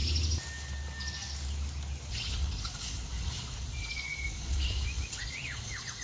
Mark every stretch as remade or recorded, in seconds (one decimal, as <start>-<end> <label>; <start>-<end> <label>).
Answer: 0.0-2.1 recorded; 2.1-6.0 remade